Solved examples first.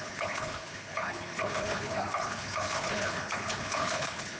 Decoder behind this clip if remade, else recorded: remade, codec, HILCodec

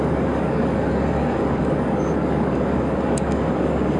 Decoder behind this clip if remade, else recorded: remade, codec, DAC